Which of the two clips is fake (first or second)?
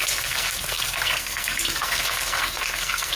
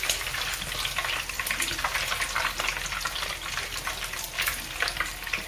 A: first